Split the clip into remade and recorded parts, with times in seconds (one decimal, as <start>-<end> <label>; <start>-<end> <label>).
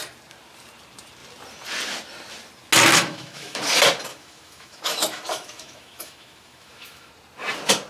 0.0-2.9 recorded; 2.9-3.6 remade; 3.6-4.1 recorded; 4.1-7.1 remade; 7.1-7.9 recorded